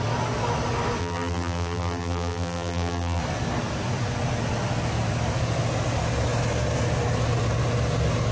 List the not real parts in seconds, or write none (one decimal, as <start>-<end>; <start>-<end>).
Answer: 1.0-3.2